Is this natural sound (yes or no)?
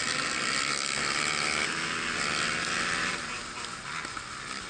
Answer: yes